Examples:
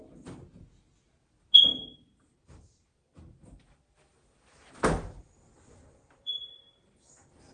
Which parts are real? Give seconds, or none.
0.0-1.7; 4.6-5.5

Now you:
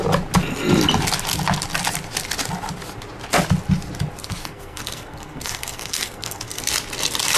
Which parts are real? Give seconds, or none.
0.0-4.2; 6.6-7.4

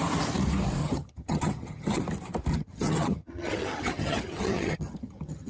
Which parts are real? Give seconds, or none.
0.0-0.8; 2.0-2.5

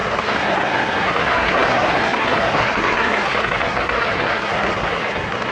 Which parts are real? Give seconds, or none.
none

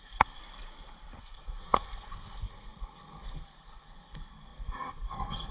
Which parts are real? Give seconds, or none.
0.4-1.2

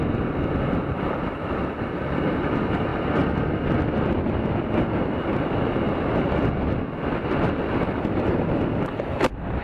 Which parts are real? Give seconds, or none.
2.9-7.5